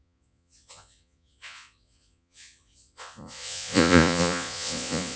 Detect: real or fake fake